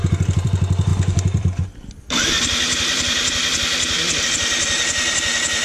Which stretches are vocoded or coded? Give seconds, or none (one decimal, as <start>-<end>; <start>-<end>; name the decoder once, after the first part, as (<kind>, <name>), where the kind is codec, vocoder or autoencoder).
0.0-5.6 (vocoder, BigVGAN v2)